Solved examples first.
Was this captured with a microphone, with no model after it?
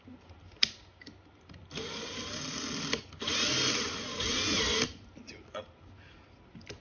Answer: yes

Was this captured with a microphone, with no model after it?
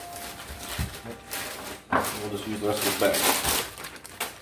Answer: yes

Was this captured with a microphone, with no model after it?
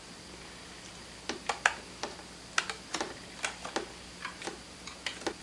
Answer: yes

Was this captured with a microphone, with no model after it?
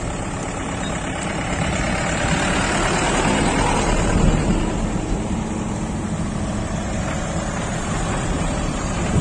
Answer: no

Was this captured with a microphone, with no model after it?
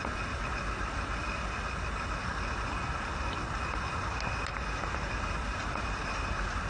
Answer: yes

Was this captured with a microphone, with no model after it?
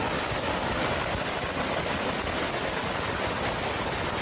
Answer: yes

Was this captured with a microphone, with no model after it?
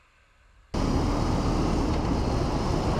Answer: yes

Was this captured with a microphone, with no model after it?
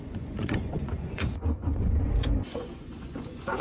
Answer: no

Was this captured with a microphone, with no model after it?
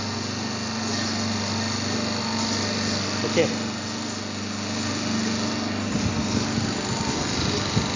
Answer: yes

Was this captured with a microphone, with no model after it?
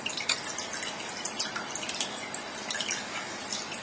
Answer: yes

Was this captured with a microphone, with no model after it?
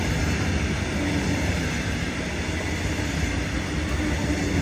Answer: yes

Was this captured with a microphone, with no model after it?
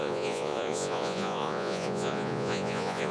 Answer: no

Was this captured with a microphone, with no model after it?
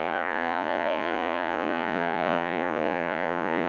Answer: no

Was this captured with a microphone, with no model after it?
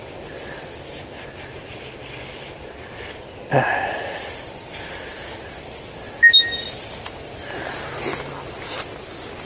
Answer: yes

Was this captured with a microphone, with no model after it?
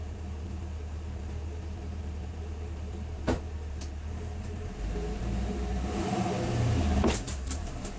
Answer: no